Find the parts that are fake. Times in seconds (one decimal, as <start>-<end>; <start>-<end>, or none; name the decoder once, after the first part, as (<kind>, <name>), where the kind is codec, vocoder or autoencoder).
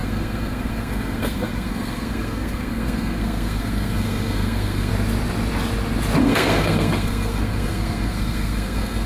0.0-4.9 (codec, SNAC); 6.2-9.1